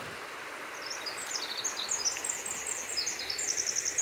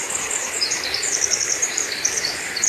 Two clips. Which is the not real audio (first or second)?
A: second